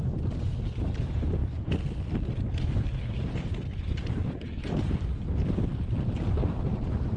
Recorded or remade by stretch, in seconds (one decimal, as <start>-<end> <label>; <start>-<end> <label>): 0.0-7.2 recorded